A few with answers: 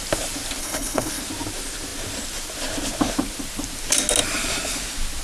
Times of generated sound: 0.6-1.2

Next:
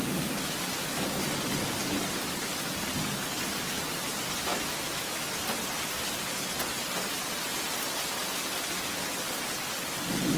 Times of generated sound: 4.5-5.3

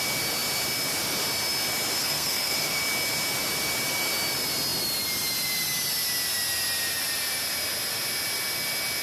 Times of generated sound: 2.0-2.8

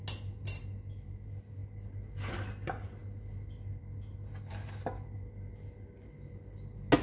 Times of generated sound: none